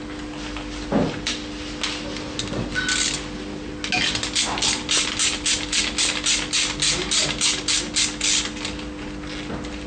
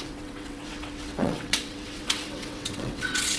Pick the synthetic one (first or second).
second